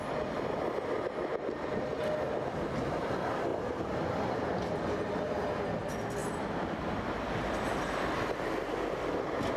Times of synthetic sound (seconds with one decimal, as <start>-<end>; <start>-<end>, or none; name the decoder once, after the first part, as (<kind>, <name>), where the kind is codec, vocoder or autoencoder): none

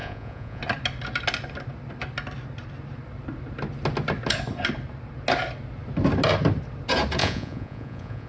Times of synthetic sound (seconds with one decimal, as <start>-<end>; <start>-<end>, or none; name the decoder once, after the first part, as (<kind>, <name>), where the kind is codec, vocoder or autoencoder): 0.0-0.6 (vocoder, Vocos); 7.2-8.3

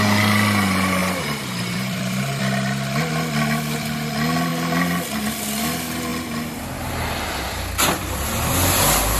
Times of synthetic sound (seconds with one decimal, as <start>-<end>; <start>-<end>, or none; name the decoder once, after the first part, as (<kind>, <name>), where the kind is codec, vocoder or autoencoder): 1.0-2.4 (vocoder, BigVGAN v2)

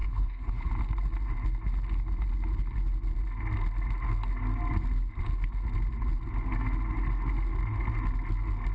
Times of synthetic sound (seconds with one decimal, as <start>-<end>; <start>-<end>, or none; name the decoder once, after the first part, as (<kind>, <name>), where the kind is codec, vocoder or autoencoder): 0.0-0.7 (codec, HILCodec)

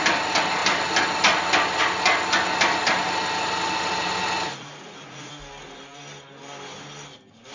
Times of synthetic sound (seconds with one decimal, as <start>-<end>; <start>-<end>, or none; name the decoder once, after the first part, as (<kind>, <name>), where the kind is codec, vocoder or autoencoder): 4.5-5.3 (vocoder, Vocos)

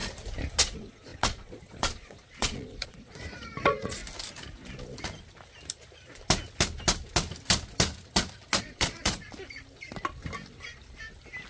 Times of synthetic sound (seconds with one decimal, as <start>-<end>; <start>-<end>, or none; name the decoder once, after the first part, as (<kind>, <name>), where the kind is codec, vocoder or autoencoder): 0.6-4.0 (vocoder, Vocos); 8.6-9.2

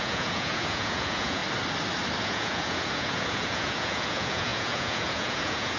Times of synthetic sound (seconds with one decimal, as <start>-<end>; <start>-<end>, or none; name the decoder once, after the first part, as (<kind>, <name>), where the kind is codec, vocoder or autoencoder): 0.0-1.4 (vocoder, Vocos); 2.2-5.8